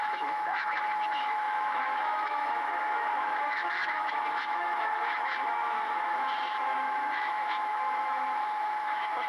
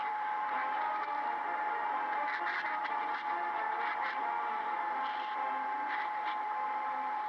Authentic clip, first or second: second